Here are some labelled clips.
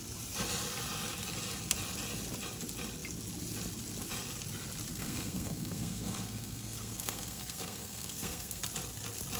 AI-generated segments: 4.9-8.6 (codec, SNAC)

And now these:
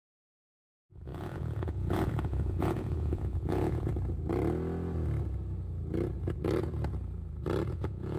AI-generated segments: 0.0-3.9 (vocoder, Vocos); 7.7-8.2

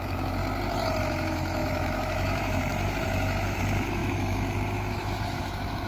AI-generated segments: 0.0-0.4 (autoencoder, DAC-VAE); 1.0-5.9

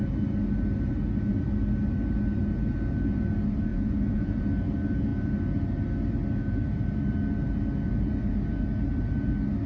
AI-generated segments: 3.7-4.4 (vocoder, Vocos)

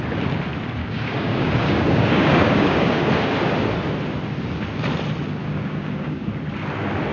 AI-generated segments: 0.8-3.1 (codec, DAC); 5.4-6.3

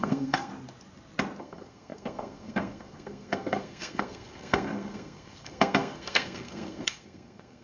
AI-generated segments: 0.0-0.5 (codec, SNAC); 1.4-7.6